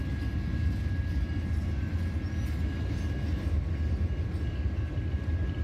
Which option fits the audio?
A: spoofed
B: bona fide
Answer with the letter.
B